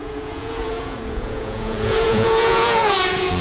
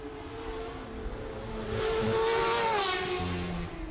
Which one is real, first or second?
second